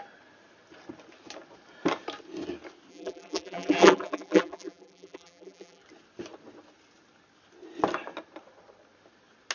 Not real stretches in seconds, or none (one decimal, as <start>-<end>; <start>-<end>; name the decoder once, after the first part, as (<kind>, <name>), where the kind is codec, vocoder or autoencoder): 2.9-5.8 (vocoder, BigVGAN v2)